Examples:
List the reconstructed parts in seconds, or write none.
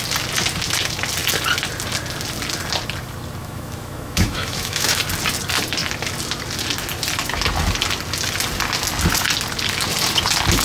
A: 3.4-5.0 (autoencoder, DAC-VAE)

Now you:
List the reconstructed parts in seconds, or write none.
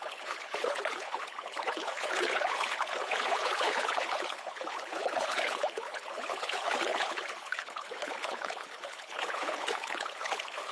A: 0.0-10.7 (codec, HILCodec)